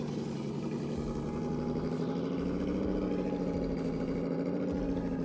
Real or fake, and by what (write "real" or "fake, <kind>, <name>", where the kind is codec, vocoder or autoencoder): real